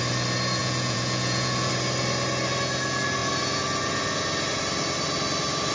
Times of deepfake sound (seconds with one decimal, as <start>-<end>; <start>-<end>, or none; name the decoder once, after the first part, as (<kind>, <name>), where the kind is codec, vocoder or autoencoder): 0.6-1.7 (vocoder, Vocos)